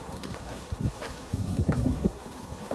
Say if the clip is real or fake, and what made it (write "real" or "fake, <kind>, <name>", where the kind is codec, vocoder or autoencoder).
fake, codec, SNAC